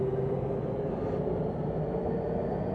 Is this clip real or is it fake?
real